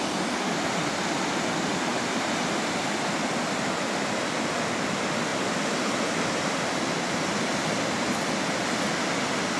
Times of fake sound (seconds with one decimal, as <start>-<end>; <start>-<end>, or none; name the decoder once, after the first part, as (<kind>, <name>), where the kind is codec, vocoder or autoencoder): 1.9-2.8 (vocoder, BigVGAN v2)